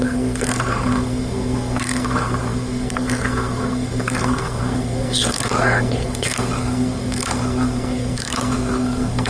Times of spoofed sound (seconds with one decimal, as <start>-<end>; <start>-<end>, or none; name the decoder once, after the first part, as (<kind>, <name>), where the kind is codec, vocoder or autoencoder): 0.0-9.3 (codec, SNAC)